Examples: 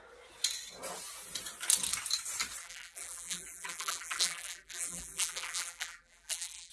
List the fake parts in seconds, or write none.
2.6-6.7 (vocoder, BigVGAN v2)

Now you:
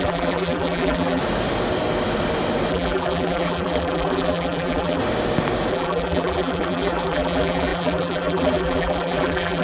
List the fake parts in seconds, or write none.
0.0-1.2 (vocoder, BigVGAN v2); 2.7-5.0; 5.7-9.6

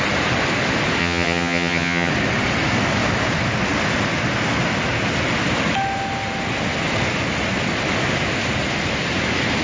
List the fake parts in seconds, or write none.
1.0-2.1 (vocoder, HiFi-GAN)

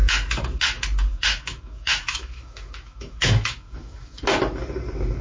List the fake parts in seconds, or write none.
1.1-4.2 (autoencoder, DAC-VAE)